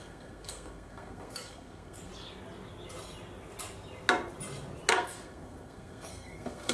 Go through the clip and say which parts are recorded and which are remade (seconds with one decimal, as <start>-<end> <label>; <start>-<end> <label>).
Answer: 0.0-2.1 remade; 2.1-4.9 recorded; 4.9-6.7 remade